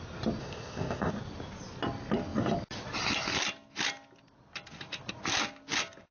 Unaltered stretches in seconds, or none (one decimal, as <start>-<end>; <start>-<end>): 0.0-0.4; 1.1-6.1